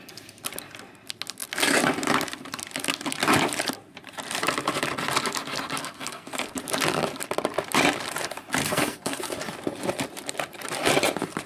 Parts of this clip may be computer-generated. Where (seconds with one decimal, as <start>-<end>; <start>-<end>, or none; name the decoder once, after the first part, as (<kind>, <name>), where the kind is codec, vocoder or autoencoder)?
5.8-6.6 (codec, SNAC); 8.6-9.2